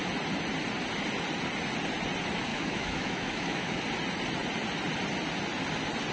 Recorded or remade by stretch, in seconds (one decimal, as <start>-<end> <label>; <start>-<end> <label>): 0.0-2.5 recorded; 2.5-3.8 remade; 3.8-6.1 recorded